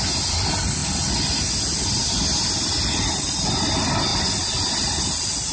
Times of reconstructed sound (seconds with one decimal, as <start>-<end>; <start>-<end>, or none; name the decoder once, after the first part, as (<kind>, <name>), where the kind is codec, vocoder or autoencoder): none